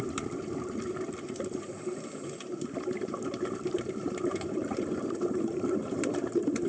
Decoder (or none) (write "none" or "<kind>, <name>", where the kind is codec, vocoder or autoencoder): vocoder, BigVGAN v2